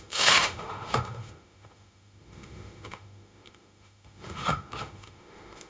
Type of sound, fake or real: fake